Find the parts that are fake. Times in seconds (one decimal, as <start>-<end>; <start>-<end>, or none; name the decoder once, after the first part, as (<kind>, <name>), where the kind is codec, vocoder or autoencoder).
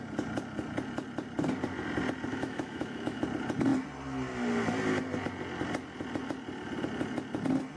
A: 2.3-3.2 (autoencoder, DAC-VAE)